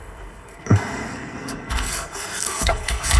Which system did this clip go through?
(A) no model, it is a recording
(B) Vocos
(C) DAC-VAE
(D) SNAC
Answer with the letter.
D